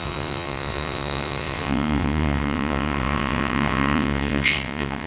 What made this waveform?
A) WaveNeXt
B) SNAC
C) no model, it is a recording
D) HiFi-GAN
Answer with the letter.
A